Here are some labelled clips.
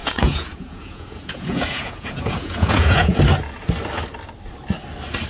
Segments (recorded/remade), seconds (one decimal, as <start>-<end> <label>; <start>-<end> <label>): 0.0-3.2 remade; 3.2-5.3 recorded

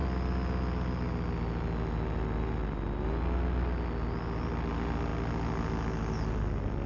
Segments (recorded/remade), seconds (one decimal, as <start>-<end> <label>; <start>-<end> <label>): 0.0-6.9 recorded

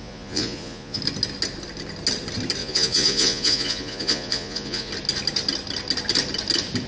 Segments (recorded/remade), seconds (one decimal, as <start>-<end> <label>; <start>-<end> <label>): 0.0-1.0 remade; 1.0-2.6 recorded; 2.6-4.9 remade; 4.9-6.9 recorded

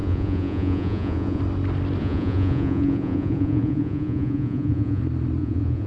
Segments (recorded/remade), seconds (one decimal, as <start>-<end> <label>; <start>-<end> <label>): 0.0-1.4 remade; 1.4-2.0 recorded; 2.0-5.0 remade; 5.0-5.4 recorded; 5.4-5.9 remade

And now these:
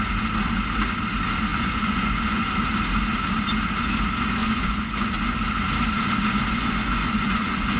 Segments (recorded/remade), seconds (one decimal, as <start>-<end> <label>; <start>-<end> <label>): 0.0-1.5 recorded; 1.5-2.5 remade; 2.5-4.4 recorded; 4.4-5.3 remade; 5.3-6.5 recorded; 6.5-7.8 remade

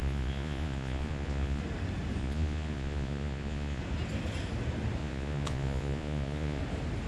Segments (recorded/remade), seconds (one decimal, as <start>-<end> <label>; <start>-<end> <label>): 0.0-1.6 remade; 1.6-2.2 recorded; 2.2-3.8 remade; 3.8-5.0 recorded; 5.0-6.6 remade; 6.6-7.1 recorded